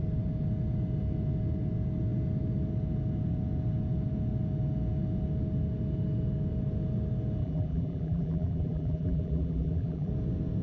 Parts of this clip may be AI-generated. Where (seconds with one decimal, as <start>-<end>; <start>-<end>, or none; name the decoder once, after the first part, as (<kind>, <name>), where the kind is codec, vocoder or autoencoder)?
7.4-10.1 (vocoder, BigVGAN v2)